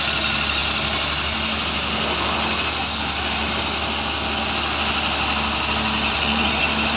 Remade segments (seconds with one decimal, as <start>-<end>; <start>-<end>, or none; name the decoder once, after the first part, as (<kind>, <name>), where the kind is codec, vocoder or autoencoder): 6.1-6.6 (vocoder, Vocos)